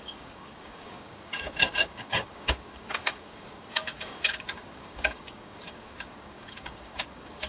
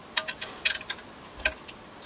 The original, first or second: second